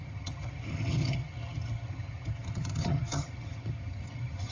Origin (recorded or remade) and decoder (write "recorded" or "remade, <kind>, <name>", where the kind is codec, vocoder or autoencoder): remade, vocoder, HiFi-GAN